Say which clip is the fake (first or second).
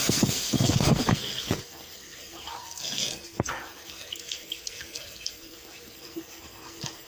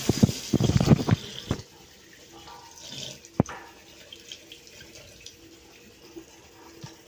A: first